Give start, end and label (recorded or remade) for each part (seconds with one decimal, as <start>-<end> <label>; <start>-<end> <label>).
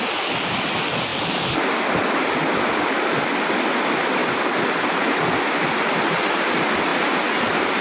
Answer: 0.0-1.1 recorded; 1.1-1.7 remade; 1.7-6.9 recorded; 6.9-7.8 remade